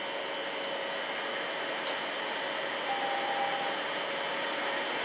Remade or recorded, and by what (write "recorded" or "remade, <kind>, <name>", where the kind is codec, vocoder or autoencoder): recorded